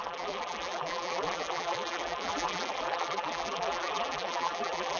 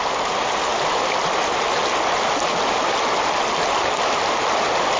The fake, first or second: first